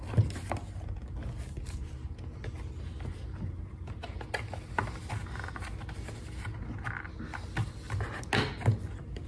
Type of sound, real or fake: real